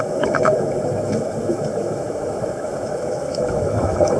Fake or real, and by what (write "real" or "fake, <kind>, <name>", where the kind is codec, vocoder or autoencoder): fake, autoencoder, DAC-VAE